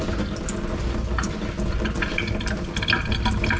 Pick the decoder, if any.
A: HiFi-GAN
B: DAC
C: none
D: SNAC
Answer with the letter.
C